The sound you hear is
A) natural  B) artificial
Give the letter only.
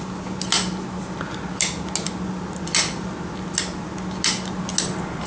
A